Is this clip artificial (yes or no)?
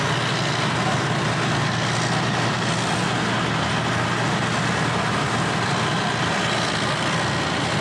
no